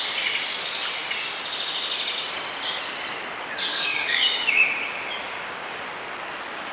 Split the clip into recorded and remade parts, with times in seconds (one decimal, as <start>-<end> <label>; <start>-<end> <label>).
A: 0.0-3.7 recorded; 3.7-4.5 remade; 4.5-5.2 recorded; 5.2-5.8 remade; 5.8-6.7 recorded